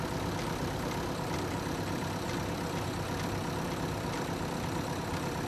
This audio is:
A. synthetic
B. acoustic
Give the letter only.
B